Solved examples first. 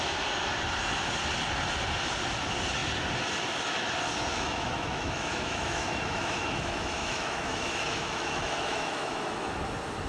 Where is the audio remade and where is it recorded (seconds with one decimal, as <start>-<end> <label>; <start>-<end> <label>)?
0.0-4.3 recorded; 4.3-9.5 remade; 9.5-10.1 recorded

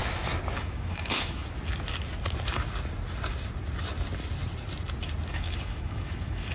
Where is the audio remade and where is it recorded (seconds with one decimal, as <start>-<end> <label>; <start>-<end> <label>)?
0.0-0.6 recorded; 0.6-1.4 remade; 1.4-5.3 recorded; 5.3-6.5 remade

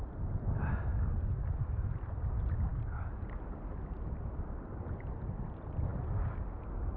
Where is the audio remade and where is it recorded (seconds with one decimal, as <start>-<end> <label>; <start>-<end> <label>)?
0.0-7.0 recorded

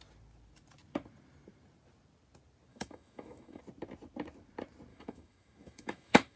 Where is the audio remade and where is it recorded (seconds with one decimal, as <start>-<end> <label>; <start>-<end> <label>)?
0.0-2.7 recorded; 2.7-3.6 remade; 3.6-4.9 recorded; 4.9-6.4 remade